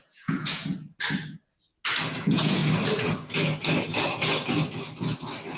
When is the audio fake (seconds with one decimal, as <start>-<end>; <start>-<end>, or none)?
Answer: 0.0-0.7; 2.2-2.6